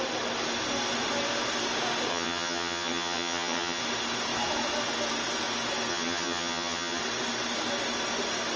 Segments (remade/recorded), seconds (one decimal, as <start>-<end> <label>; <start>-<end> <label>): 0.0-2.1 recorded; 2.1-3.8 remade; 3.8-5.9 recorded; 5.9-7.0 remade; 7.0-8.6 recorded